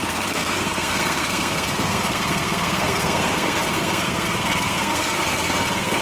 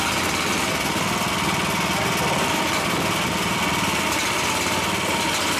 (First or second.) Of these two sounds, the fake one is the first